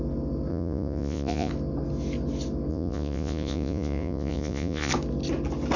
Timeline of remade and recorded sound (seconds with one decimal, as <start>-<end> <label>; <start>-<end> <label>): 0.0-0.5 recorded; 0.5-1.5 remade; 1.5-2.7 recorded; 2.7-4.9 remade; 4.9-5.8 recorded